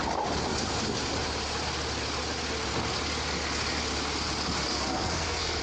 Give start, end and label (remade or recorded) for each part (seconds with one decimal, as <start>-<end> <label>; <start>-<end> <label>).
0.0-4.7 recorded; 4.7-5.6 remade